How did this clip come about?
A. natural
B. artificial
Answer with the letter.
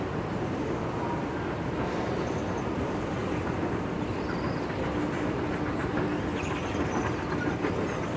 A